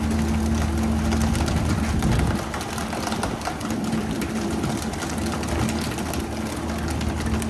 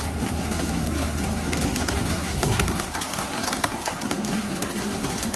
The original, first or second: first